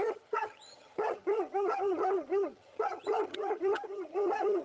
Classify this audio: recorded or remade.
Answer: remade